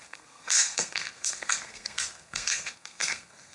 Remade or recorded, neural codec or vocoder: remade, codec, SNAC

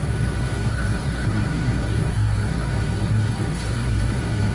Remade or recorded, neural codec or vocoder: remade, codec, SNAC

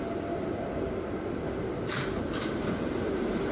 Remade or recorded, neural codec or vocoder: recorded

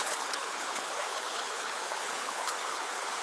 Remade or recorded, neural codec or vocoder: remade, codec, HILCodec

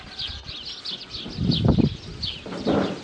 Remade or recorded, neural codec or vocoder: recorded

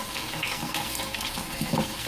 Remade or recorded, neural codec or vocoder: remade, codec, SNAC